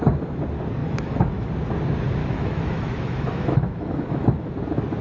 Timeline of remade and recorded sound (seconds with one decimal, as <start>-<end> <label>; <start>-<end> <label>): 0.0-0.8 recorded; 0.8-1.5 remade; 1.5-2.2 recorded; 2.2-4.5 remade; 4.5-5.0 recorded